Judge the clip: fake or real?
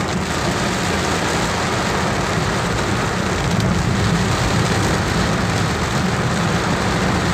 real